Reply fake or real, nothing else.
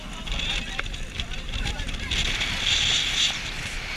real